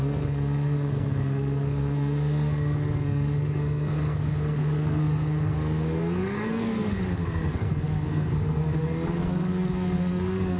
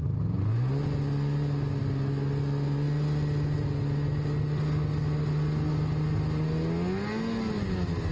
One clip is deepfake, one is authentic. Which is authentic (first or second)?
second